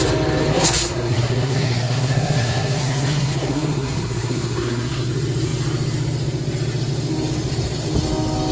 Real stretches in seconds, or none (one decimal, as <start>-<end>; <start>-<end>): 0.0-0.5; 5.1-8.5